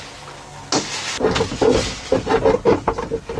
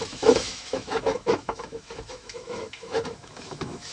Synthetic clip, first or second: second